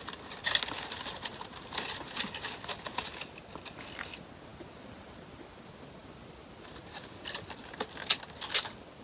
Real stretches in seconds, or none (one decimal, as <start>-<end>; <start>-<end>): 0.0-9.0